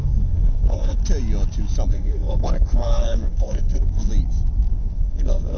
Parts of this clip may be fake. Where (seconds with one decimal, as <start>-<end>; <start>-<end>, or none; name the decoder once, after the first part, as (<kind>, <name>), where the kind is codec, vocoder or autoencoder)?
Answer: 0.0-1.0 (codec, SNAC); 1.9-4.1; 4.8-5.6